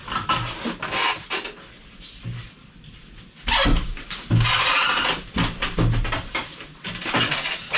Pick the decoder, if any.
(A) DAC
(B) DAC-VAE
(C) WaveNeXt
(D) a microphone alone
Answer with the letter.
D